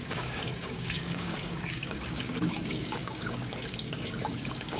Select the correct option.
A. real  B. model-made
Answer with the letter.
B